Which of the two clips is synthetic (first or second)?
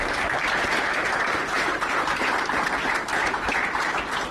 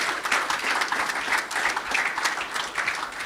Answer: first